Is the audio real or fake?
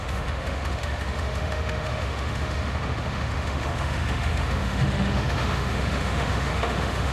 fake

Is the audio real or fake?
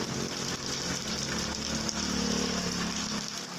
real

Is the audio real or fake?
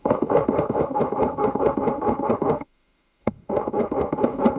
fake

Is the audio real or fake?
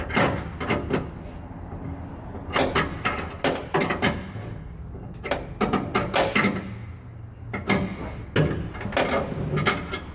real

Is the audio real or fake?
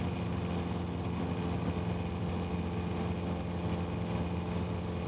real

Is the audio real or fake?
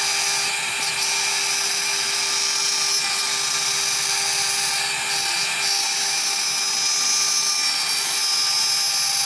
real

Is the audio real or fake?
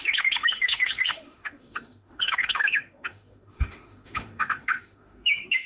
fake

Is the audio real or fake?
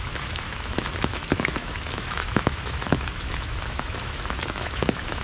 fake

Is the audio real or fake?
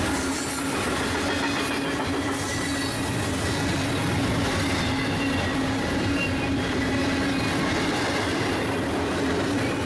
real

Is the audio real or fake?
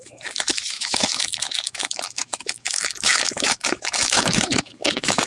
fake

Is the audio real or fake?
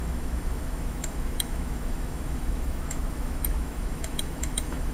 fake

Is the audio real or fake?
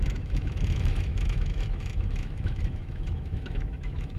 fake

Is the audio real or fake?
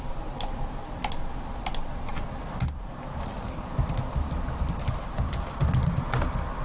real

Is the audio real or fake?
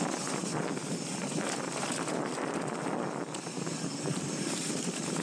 real